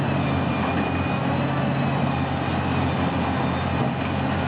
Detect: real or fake real